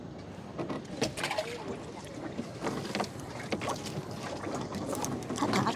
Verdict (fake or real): real